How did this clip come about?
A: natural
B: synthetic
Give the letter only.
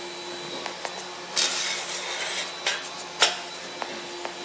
A